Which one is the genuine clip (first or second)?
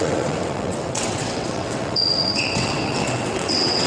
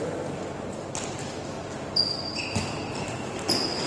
second